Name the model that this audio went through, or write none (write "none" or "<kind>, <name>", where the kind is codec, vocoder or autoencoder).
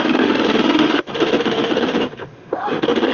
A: autoencoder, DAC-VAE